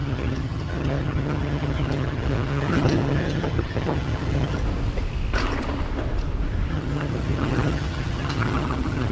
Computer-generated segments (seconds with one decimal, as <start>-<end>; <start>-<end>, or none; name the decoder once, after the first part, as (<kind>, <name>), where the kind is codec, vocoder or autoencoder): 0.0-4.6 (vocoder, HiFi-GAN); 6.7-9.1